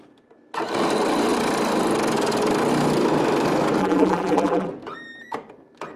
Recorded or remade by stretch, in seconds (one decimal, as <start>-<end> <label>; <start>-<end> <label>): 0.0-3.8 recorded; 3.8-4.7 remade; 4.7-6.0 recorded